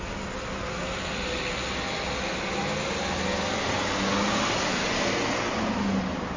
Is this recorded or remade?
recorded